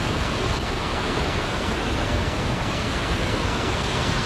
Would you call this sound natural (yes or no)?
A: no